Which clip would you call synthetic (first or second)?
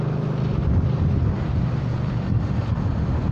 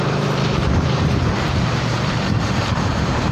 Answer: second